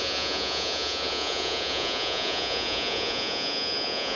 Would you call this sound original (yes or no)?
no